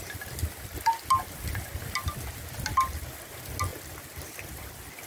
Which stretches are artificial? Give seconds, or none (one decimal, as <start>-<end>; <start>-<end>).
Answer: none